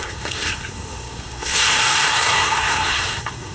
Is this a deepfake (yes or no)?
yes